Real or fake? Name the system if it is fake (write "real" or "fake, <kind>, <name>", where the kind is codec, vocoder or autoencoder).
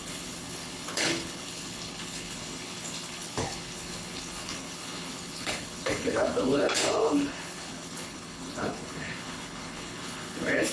fake, codec, HILCodec